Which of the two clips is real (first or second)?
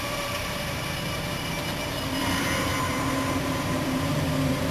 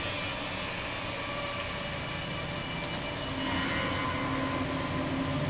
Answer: second